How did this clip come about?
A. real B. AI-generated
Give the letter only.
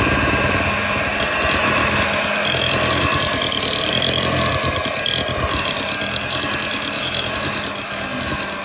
A